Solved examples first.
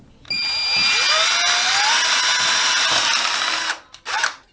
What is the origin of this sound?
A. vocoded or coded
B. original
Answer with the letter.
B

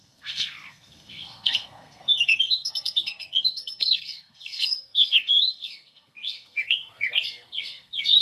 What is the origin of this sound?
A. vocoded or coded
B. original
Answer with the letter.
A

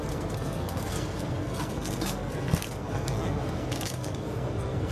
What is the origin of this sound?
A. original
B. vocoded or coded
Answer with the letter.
B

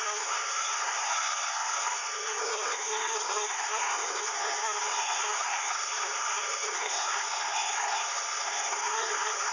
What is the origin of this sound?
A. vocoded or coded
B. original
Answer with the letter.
A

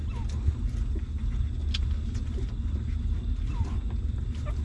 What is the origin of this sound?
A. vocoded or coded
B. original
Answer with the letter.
B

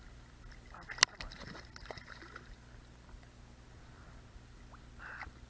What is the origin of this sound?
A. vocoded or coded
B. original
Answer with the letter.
B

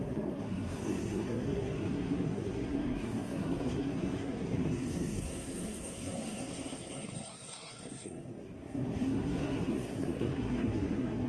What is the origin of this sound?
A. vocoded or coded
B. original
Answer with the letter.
A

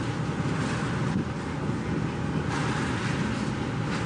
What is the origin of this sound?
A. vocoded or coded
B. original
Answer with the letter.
B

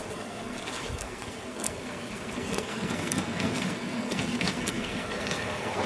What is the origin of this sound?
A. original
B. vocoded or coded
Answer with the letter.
B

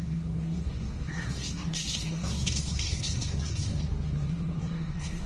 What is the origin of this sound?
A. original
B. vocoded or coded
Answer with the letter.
B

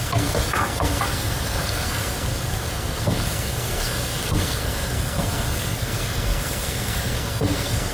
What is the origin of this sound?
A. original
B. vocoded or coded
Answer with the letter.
B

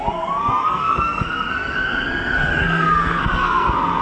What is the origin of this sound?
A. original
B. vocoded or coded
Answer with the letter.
B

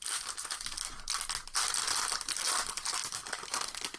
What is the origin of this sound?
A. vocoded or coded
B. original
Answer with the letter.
B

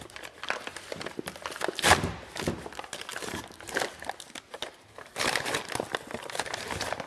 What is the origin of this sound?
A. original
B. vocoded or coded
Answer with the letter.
A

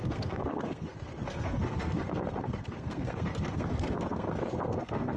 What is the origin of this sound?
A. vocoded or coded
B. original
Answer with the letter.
A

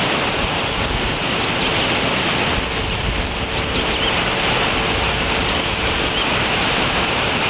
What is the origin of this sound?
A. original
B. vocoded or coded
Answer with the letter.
A